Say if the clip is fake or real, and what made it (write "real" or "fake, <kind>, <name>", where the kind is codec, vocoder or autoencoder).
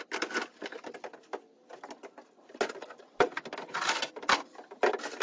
real